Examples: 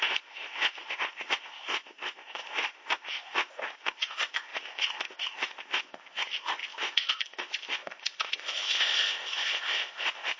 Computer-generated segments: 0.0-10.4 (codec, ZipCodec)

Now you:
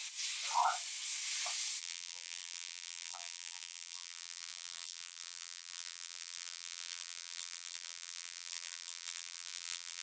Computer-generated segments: 1.8-10.0 (vocoder, BigVGAN v2)

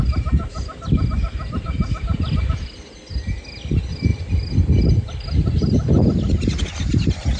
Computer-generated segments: none

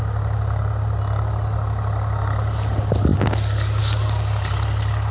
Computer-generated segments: none

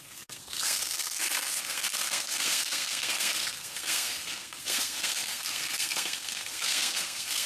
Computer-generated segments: 0.0-7.5 (codec, SNAC)